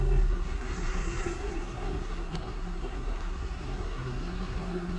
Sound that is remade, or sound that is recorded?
remade